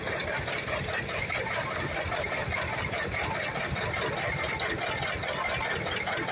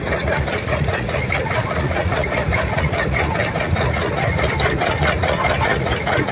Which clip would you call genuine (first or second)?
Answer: first